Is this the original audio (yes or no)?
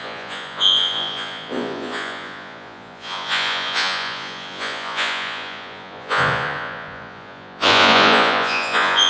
no